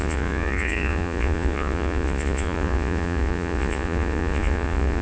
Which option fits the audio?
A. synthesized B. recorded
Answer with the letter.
A